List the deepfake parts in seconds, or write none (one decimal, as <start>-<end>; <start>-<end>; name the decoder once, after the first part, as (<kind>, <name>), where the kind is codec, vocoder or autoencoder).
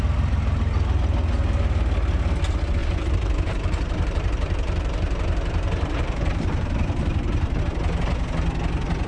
2.8-7.6 (vocoder, BigVGAN v2)